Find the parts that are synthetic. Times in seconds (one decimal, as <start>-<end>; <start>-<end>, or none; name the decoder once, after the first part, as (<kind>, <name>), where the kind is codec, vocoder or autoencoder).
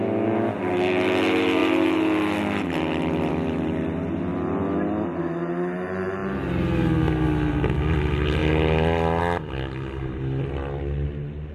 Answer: none